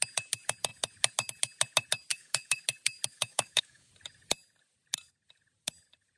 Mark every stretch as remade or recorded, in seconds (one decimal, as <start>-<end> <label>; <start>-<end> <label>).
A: 0.0-2.1 recorded; 2.1-2.6 remade; 2.6-3.1 recorded; 3.1-3.9 remade; 3.9-6.2 recorded